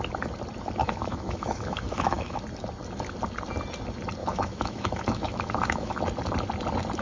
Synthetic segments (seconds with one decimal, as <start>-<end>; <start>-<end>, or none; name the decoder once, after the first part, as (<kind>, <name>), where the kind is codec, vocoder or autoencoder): 0.8-2.4 (autoencoder, DAC-VAE); 4.2-6.0